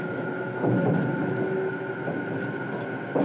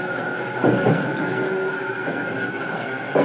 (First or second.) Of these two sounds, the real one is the first